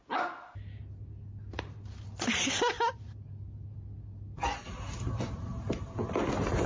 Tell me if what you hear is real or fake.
real